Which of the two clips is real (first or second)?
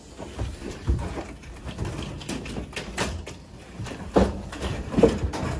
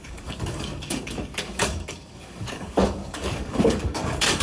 first